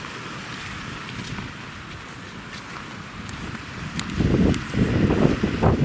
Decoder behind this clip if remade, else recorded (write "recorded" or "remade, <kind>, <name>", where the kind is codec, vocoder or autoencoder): recorded